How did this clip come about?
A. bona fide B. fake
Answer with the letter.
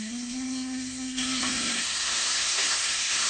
B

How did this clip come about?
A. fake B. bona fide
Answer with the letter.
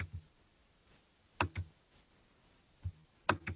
B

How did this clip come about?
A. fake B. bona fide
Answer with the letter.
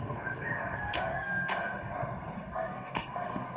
A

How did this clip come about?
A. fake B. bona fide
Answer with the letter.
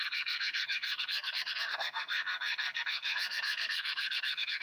A